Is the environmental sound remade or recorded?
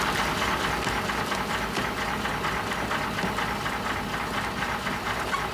recorded